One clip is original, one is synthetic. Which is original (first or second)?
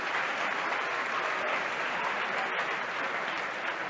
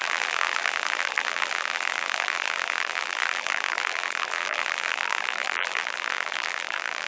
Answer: first